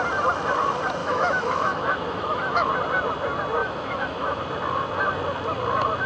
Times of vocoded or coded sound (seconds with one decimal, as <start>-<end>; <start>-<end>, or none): 1.0-2.7; 3.6-4.4